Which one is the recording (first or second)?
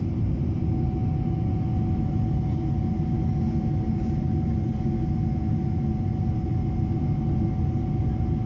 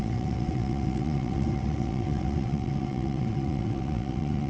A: first